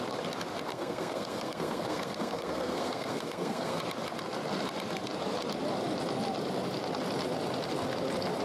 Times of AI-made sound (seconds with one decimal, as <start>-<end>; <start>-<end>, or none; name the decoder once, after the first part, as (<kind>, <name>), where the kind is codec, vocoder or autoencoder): 0.7-3.8 (codec, SNAC)